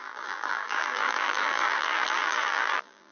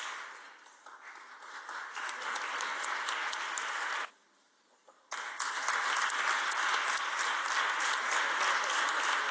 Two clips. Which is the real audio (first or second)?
second